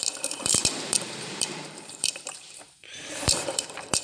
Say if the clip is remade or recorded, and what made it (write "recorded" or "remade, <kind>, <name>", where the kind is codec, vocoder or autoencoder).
remade, vocoder, BigVGAN v2